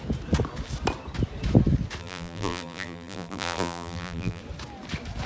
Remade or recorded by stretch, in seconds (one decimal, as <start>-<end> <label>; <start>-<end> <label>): 0.0-2.0 recorded; 2.0-4.4 remade; 4.4-5.3 recorded